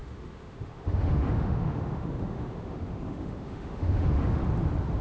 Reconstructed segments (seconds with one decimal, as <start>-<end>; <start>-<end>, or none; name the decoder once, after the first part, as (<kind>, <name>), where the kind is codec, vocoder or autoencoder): 0.0-4.4 (autoencoder, DAC-VAE)